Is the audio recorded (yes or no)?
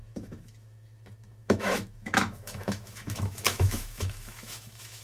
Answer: no